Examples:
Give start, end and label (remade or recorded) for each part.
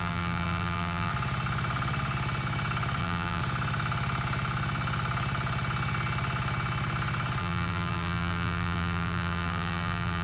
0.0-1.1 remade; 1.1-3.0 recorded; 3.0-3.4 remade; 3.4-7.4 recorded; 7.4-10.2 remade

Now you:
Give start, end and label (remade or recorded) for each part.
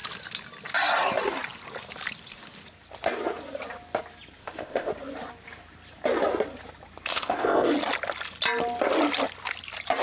0.0-4.4 recorded; 4.4-4.9 remade; 4.9-7.1 recorded; 7.1-7.7 remade; 7.7-10.0 recorded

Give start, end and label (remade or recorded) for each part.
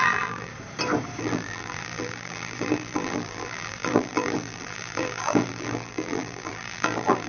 0.0-0.5 remade; 0.5-1.2 recorded; 1.2-7.3 remade